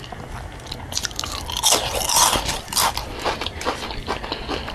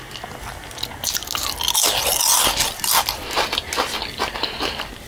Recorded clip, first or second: second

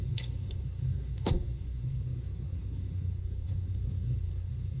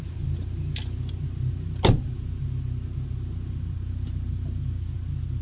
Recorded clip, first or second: second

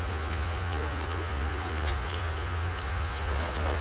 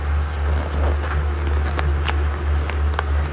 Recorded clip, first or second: second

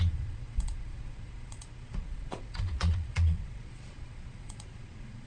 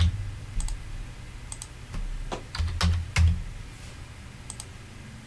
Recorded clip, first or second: second